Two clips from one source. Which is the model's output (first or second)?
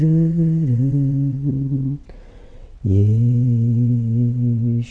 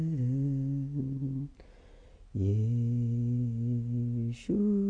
first